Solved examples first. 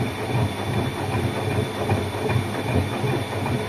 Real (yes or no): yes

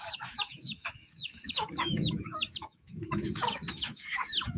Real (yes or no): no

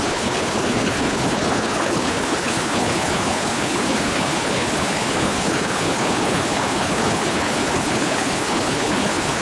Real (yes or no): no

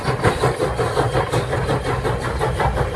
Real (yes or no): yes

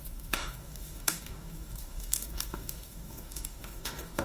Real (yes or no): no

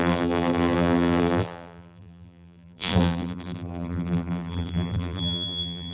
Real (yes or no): no